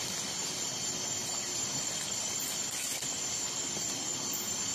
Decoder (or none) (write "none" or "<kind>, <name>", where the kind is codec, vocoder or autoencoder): none